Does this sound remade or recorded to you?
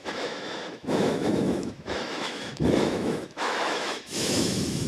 remade